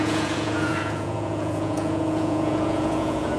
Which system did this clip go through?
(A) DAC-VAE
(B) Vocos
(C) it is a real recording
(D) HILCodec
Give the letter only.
B